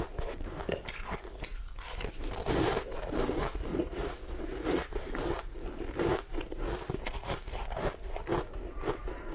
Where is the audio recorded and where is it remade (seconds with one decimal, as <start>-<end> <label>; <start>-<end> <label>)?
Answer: 0.0-3.7 recorded; 3.7-4.9 remade; 4.9-9.3 recorded